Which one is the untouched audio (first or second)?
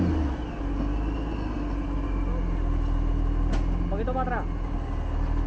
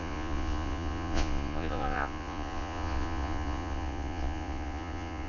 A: first